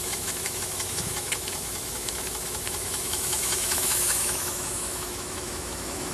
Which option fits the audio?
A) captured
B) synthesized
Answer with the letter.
B